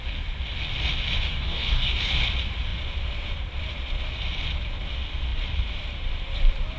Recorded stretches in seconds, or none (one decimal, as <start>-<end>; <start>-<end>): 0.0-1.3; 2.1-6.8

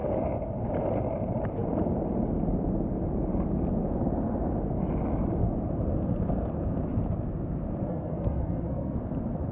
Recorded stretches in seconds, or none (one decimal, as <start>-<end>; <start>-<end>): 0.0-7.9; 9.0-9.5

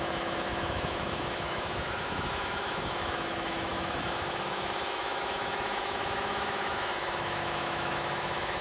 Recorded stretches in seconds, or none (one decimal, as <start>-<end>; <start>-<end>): none

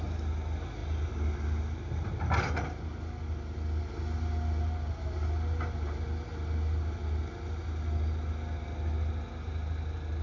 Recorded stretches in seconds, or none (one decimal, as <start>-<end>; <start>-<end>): 0.0-10.2

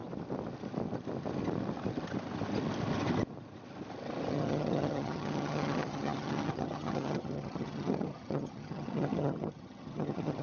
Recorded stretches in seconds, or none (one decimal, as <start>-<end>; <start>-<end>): 0.0-4.3

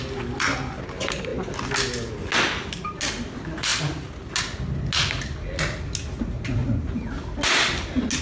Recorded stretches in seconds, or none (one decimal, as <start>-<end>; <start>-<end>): 0.0-8.2

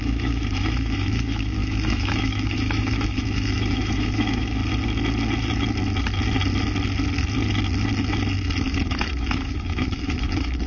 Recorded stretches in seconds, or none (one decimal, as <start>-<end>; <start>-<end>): 4.6-8.6